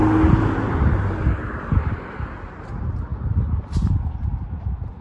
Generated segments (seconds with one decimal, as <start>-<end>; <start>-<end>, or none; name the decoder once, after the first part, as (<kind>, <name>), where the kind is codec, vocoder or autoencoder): none